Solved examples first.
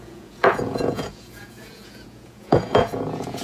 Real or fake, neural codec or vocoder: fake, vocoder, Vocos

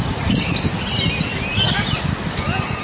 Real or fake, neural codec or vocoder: real